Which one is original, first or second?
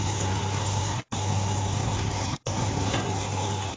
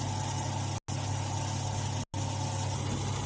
second